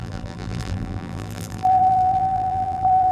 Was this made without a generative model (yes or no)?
no